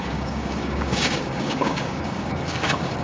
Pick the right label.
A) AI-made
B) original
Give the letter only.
A